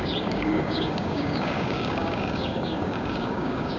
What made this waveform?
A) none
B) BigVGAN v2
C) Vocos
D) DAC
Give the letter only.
D